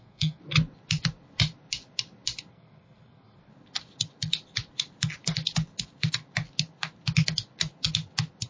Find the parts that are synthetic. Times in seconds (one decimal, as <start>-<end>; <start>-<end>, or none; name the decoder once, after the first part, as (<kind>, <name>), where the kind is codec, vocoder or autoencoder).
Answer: 0.0-0.4 (codec, SNAC); 2.5-3.5